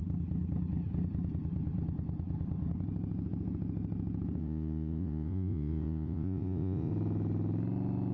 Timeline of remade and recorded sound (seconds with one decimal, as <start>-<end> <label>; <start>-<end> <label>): 0.0-4.4 recorded; 4.4-6.9 remade; 6.9-8.1 recorded